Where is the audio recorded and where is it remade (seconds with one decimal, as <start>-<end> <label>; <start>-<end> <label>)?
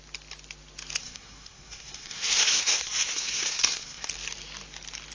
0.0-1.0 recorded; 1.0-4.1 remade; 4.1-5.1 recorded